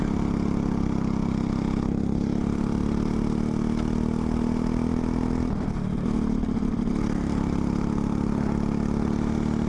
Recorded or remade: recorded